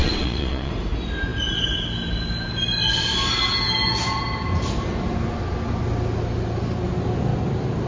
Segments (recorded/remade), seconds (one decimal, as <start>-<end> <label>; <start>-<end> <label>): 0.0-0.7 remade; 0.7-7.9 recorded

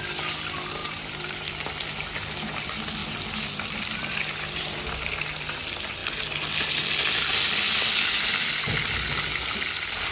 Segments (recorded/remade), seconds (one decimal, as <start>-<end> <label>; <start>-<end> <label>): 0.0-0.8 recorded; 0.8-1.5 remade; 1.5-10.1 recorded

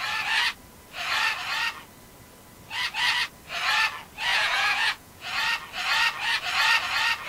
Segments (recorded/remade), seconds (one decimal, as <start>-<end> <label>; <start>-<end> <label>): 0.0-4.3 recorded; 4.3-5.3 remade; 5.3-7.3 recorded

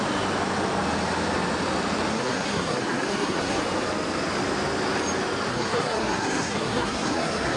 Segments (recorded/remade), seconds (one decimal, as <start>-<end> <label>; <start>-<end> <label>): 0.0-2.1 recorded; 2.1-3.6 remade; 3.6-5.5 recorded; 5.5-7.6 remade

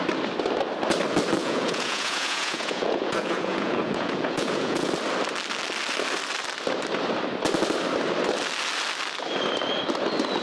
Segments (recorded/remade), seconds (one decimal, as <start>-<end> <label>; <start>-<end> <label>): 0.0-1.4 recorded; 1.4-4.9 remade; 4.9-10.4 recorded